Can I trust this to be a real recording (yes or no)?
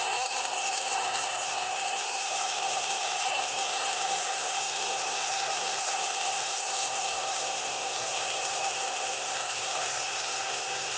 no